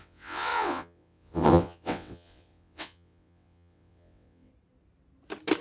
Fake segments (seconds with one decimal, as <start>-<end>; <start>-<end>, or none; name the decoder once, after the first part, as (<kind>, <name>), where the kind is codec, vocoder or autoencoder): 0.0-4.5 (vocoder, WaveNeXt)